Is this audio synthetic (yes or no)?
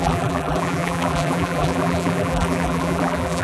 yes